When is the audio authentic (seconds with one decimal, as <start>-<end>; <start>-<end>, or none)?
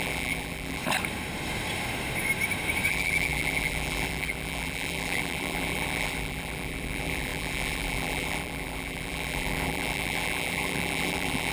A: 0.8-2.9